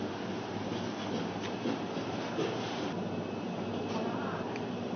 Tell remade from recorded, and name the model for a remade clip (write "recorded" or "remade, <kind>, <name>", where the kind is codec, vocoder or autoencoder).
recorded